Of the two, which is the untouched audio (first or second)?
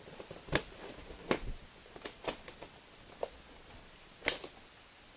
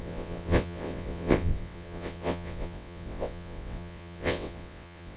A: first